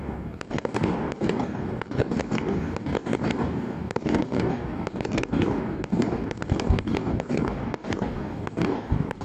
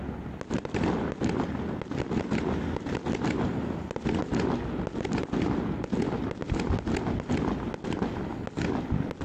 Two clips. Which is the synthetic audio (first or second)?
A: first